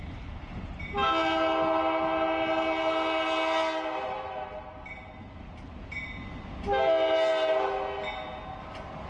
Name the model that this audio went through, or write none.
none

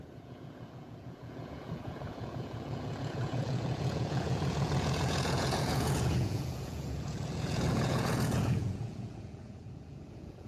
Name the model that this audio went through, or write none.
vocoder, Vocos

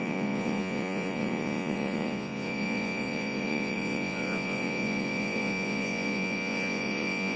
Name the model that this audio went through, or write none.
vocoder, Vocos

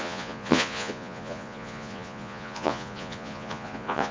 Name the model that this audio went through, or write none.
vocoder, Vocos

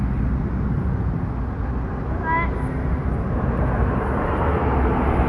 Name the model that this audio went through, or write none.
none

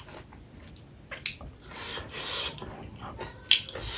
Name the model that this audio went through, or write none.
none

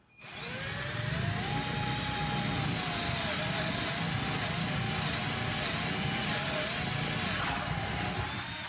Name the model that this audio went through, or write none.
none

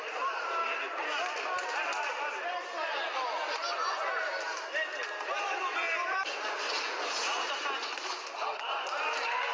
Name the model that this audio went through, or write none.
none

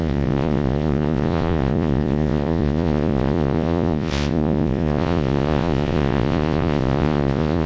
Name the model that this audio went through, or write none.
vocoder, Vocos